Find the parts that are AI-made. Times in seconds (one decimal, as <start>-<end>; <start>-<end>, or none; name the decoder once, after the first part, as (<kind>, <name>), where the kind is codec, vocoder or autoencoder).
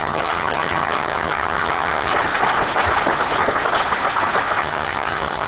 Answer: 0.0-2.1 (vocoder, HiFi-GAN); 4.6-5.5